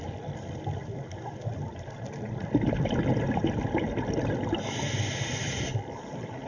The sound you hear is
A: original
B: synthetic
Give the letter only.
A